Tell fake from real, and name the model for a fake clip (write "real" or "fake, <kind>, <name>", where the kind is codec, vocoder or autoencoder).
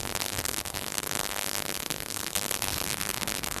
fake, codec, SNAC